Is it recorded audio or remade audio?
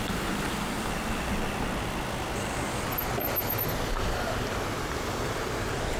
recorded